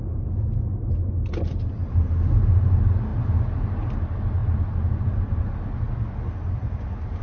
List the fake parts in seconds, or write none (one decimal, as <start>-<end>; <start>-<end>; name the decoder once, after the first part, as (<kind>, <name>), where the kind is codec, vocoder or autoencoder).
none